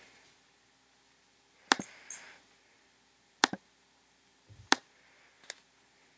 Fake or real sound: real